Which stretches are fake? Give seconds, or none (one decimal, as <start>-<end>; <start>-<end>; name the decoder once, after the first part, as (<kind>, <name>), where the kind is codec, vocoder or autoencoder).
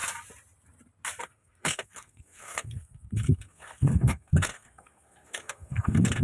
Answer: 1.2-6.2 (codec, SNAC)